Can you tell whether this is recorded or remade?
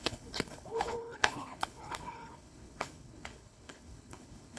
remade